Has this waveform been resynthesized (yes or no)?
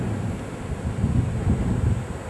no